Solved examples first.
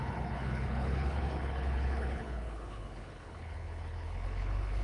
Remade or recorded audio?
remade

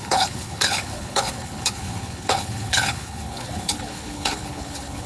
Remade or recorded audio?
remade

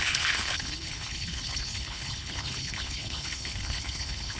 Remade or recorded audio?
remade